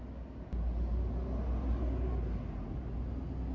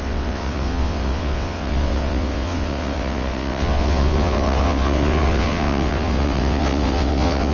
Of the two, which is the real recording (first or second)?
first